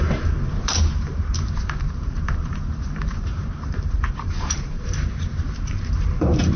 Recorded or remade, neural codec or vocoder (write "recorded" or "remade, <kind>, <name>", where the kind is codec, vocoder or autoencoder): remade, vocoder, BigVGAN v2